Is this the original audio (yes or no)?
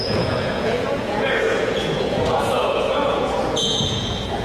no